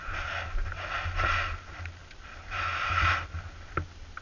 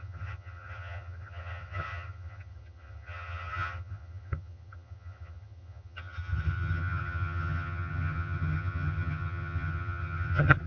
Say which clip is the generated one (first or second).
second